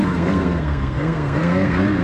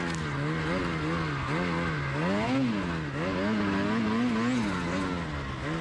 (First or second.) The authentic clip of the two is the second